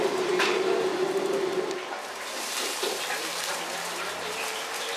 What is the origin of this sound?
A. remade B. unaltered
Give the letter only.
A